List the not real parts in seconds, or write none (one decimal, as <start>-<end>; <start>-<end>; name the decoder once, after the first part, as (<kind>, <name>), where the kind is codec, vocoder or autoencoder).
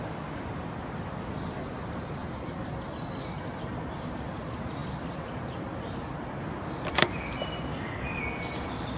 7.7-8.2 (codec, DAC)